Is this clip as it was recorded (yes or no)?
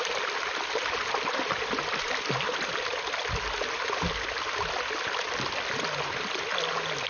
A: yes